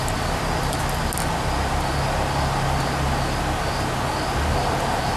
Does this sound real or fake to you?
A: real